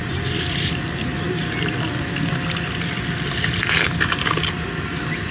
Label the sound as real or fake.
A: real